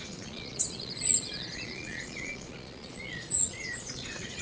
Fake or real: fake